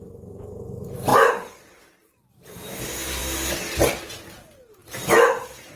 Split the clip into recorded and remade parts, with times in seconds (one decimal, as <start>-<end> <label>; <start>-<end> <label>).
0.0-1.1 recorded; 1.1-2.8 remade; 2.8-5.8 recorded